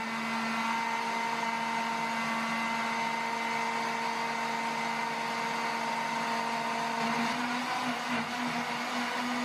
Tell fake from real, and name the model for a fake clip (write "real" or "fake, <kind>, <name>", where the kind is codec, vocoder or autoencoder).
real